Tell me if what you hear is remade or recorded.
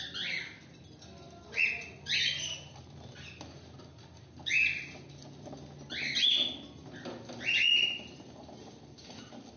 recorded